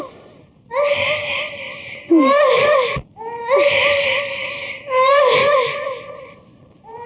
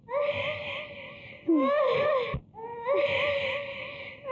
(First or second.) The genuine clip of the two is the second